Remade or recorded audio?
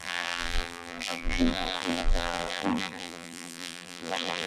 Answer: remade